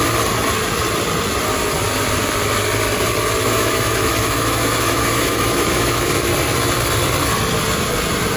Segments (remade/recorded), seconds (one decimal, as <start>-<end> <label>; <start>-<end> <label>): 0.0-3.4 recorded; 3.4-6.3 remade; 6.3-8.4 recorded